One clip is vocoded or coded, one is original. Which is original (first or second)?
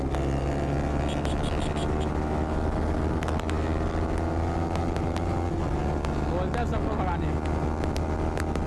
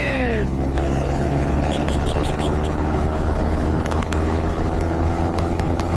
first